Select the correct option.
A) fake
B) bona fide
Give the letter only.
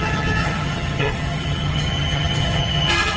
A